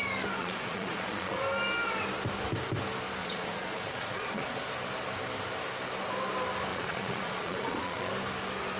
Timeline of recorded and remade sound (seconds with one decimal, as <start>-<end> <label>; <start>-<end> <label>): 0.0-0.4 recorded; 0.4-1.4 remade; 1.4-3.2 recorded; 3.2-4.7 remade; 4.7-6.7 recorded; 6.7-8.1 remade; 8.1-8.8 recorded